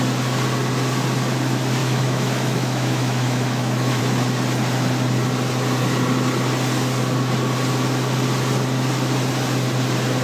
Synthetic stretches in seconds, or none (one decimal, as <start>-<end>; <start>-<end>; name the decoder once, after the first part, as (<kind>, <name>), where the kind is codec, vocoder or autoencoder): 1.8-4.0 (autoencoder, DAC-VAE)